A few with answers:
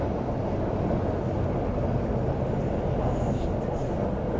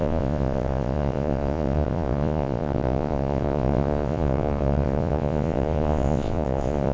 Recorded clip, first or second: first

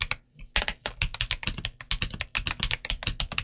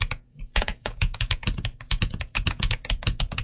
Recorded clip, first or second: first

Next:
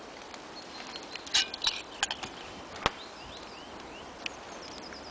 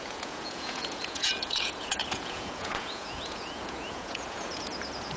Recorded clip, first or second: first